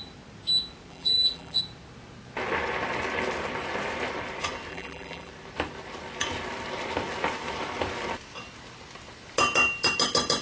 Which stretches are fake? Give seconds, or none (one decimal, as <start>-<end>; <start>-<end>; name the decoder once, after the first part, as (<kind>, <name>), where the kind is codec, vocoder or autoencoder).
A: 0.9-1.6 (vocoder, BigVGAN v2); 4.7-5.3